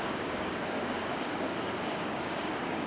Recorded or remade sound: remade